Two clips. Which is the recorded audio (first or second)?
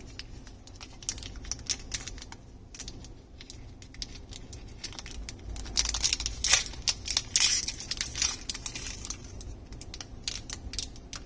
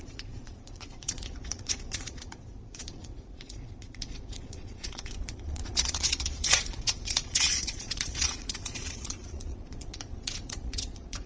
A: first